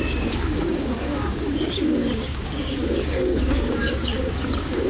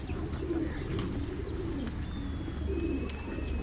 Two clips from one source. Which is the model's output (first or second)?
first